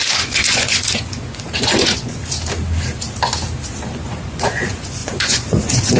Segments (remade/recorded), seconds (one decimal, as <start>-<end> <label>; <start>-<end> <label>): 0.0-2.2 remade; 2.2-3.9 recorded; 3.9-6.0 remade